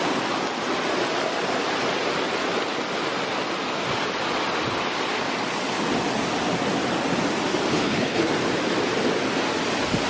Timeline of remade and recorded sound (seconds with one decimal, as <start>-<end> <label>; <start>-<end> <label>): 0.0-7.7 recorded; 7.7-8.3 remade; 8.3-10.1 recorded